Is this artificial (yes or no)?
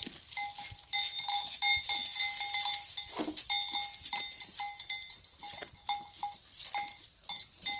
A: no